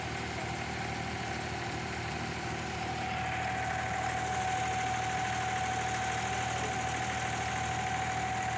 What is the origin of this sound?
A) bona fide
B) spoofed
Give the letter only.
A